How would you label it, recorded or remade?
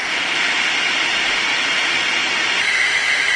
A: recorded